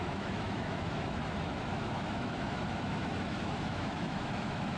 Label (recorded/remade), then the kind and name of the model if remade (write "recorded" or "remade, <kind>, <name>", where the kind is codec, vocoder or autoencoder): remade, autoencoder, DAC-VAE